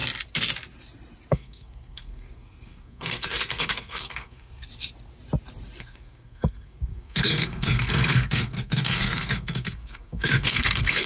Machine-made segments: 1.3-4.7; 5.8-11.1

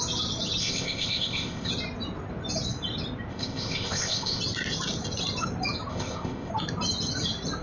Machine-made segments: 0.6-1.7; 3.3-4.4; 5.9-6.5

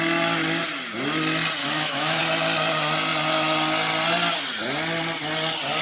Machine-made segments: 1.6-2.2

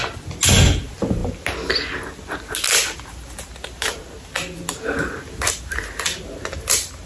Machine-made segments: none

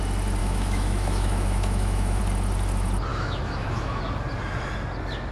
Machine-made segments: 0.4-2.2; 3.1-4.0